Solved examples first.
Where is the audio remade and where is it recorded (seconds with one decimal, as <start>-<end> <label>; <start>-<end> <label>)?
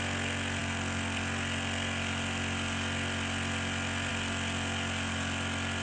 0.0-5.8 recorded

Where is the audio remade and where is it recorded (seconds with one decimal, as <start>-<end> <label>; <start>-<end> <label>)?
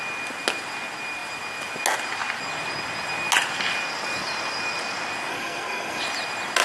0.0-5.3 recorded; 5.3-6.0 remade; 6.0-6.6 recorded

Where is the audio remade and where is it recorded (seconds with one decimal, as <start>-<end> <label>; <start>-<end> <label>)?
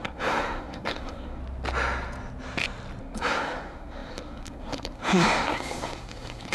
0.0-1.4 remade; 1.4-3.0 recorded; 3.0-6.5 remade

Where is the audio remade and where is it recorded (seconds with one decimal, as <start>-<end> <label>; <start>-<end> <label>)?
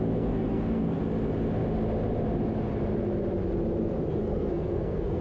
0.0-1.0 remade; 1.0-4.1 recorded; 4.1-5.2 remade